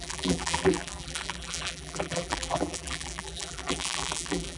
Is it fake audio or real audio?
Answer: fake